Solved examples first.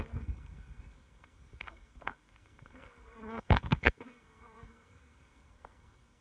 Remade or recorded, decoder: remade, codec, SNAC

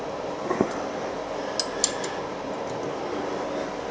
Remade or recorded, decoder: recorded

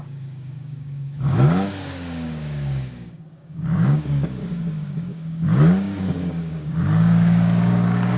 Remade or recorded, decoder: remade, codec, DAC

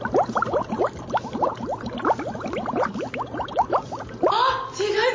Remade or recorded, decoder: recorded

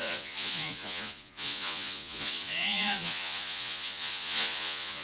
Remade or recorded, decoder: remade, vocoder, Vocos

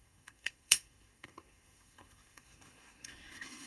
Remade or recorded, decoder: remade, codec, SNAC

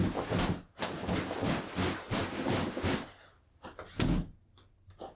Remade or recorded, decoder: recorded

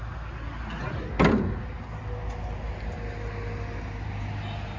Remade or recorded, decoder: recorded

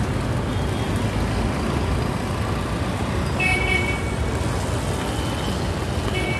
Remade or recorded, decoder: recorded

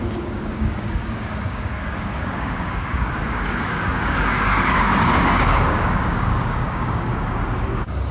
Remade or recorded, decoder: remade, codec, DAC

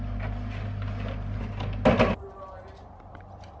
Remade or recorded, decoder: recorded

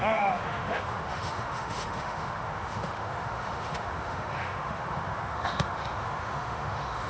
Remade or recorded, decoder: remade, autoencoder, DAC-VAE